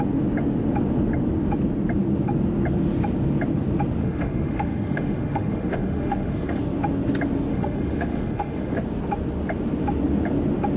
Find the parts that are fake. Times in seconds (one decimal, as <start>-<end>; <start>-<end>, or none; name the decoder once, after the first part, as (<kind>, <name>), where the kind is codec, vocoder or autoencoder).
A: 4.0-6.6 (autoencoder, DAC-VAE); 7.5-8.8